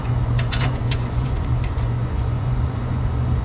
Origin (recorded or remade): remade